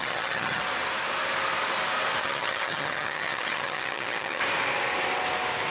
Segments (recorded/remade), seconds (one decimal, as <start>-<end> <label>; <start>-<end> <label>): 0.0-0.6 remade; 0.6-2.2 recorded; 2.2-4.4 remade; 4.4-5.7 recorded